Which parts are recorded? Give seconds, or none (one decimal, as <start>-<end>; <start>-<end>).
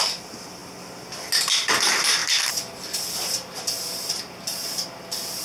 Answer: 0.0-5.4